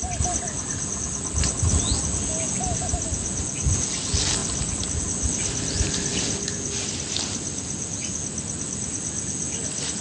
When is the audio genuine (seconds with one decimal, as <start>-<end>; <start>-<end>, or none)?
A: 0.0-10.0